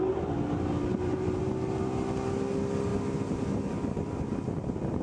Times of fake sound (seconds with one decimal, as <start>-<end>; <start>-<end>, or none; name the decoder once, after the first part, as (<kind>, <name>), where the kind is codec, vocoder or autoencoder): 0.8-1.4 (vocoder, BigVGAN v2)